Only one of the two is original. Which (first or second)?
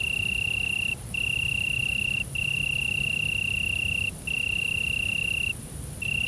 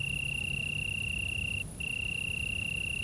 second